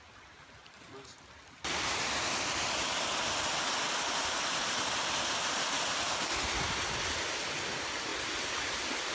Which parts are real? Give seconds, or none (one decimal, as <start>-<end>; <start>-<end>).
0.0-9.1